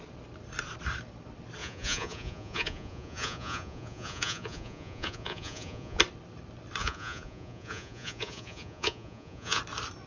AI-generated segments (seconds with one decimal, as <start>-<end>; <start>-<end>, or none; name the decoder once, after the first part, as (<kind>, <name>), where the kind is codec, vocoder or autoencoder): 1.6-6.0 (vocoder, Vocos); 6.8-9.6